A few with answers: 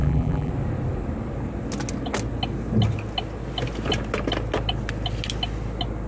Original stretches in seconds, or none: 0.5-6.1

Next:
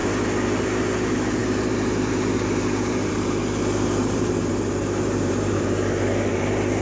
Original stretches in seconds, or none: 0.0-0.6

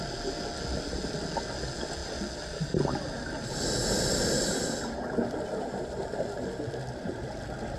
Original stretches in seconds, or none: 0.0-7.8

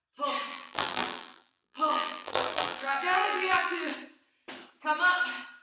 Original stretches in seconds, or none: 0.0-0.5; 3.9-5.6

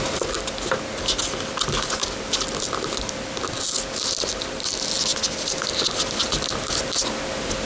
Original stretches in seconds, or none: 0.0-7.7

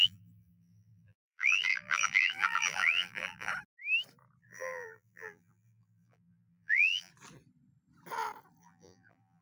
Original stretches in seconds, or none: 3.5-4.4; 7.1-8.6

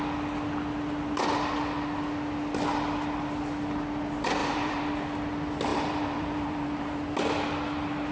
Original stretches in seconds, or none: 0.0-4.4; 4.9-5.7; 7.2-8.1

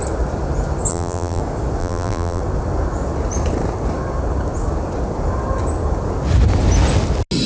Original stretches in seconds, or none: 0.0-0.9; 1.4-1.8; 2.4-7.5